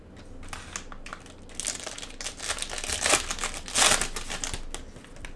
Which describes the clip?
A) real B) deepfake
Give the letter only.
A